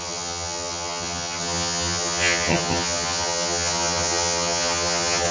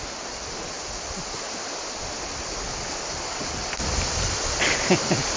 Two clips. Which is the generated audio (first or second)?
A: first